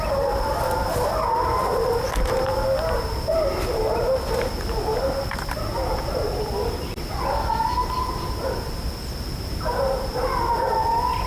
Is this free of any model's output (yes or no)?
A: yes